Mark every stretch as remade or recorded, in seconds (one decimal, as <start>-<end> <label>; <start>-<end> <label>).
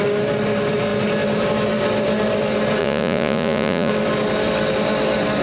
0.0-2.8 recorded; 2.8-3.9 remade; 3.9-5.4 recorded